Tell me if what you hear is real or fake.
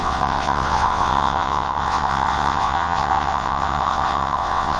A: fake